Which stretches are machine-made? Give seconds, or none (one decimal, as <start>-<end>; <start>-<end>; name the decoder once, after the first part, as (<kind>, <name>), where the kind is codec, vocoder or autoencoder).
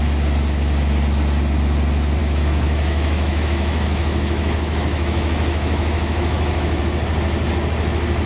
2.2-6.8 (autoencoder, DAC-VAE)